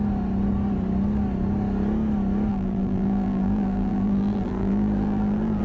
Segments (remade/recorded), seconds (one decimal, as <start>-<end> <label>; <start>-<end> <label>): 0.0-2.5 recorded; 2.5-5.6 remade